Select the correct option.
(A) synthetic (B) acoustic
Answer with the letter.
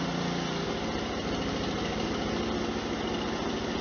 B